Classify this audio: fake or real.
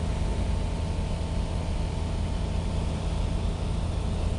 real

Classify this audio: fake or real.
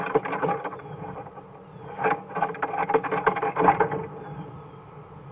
real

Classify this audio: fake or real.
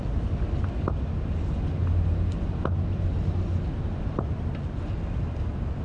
real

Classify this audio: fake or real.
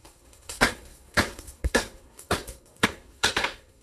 fake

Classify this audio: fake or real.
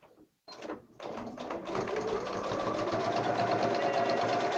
real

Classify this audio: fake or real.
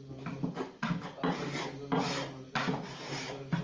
real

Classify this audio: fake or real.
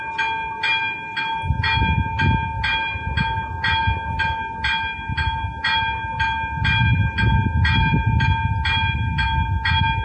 real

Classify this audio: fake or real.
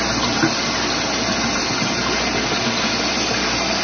real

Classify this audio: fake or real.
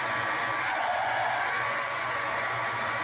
fake